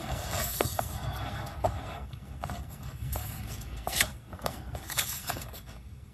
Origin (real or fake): fake